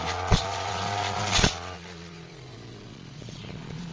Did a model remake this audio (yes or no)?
yes